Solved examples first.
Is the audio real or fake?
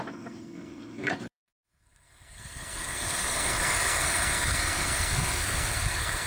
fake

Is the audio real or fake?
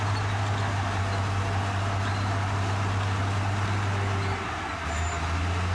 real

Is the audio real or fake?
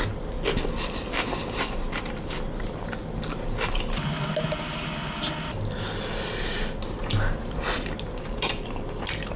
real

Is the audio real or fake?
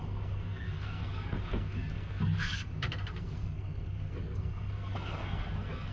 fake